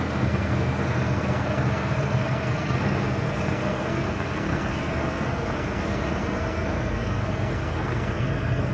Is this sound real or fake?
fake